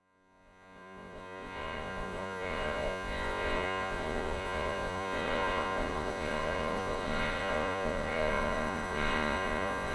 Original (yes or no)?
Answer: no